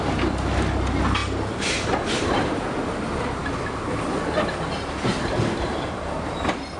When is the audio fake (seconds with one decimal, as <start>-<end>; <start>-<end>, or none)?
1.2-2.5